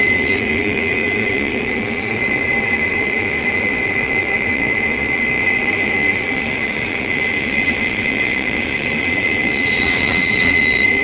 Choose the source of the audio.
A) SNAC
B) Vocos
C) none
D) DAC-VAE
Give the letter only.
B